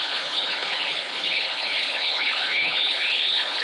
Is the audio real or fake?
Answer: fake